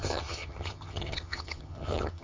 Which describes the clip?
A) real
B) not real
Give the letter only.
B